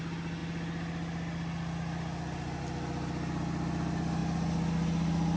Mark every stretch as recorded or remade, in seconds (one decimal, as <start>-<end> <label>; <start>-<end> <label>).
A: 0.0-5.4 recorded